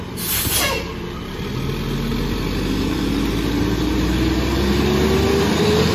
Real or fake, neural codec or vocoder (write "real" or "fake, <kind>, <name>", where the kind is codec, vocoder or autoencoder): real